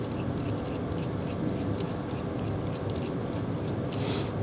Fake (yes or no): no